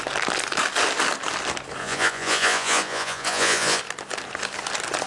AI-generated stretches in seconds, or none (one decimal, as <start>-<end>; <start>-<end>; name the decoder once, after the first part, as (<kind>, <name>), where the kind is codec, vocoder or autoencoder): 1.8-3.8 (vocoder, Vocos)